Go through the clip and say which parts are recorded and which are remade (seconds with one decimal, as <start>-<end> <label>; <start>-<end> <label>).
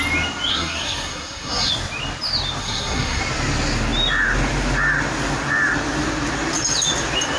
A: 0.0-0.5 recorded; 0.5-1.7 remade; 1.7-2.6 recorded; 2.6-3.2 remade; 3.2-7.4 recorded